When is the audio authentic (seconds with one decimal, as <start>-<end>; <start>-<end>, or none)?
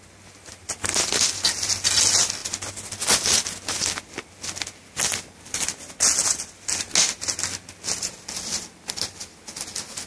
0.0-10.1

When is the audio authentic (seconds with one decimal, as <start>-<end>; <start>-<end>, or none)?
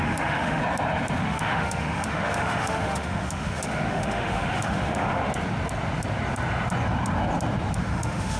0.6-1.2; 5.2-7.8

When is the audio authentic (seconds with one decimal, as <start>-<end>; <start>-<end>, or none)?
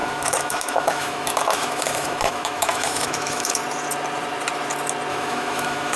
3.6-5.1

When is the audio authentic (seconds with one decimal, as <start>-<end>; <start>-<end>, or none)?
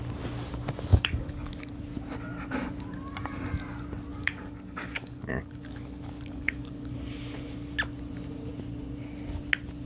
0.0-0.9; 1.8-4.1; 6.9-9.9